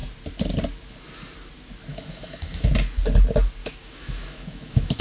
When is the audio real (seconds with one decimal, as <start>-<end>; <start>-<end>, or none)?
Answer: 0.0-1.9; 2.7-3.6